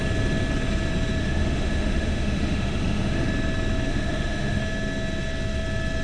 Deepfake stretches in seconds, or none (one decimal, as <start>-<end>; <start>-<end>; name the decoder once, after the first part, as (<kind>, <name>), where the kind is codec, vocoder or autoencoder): 1.2-3.3 (autoencoder, DAC-VAE); 3.9-4.6